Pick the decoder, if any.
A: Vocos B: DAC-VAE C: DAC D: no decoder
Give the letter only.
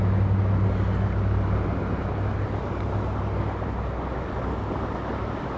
D